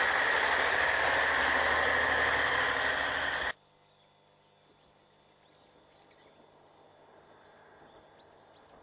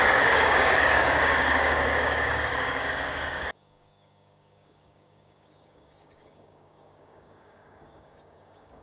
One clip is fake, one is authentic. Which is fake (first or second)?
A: second